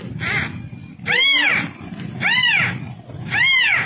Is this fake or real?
fake